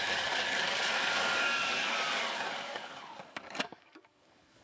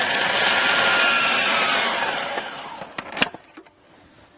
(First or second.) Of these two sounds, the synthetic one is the first